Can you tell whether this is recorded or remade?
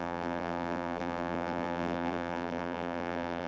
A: remade